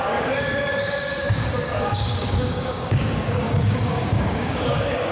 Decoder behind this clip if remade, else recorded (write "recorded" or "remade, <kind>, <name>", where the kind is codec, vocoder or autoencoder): remade, codec, DAC